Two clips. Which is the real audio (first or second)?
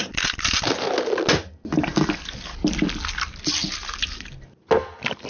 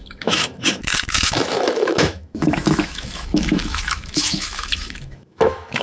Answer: first